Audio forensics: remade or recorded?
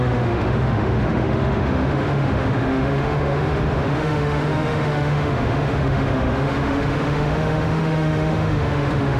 remade